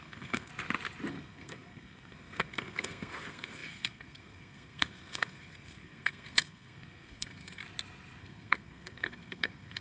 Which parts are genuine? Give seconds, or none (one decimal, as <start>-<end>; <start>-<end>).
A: 0.5-1.1; 7.6-8.2